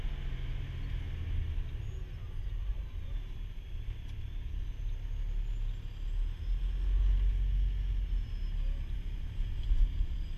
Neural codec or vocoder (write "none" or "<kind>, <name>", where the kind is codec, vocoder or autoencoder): none